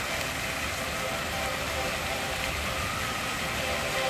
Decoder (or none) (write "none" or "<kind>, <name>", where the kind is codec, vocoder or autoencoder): none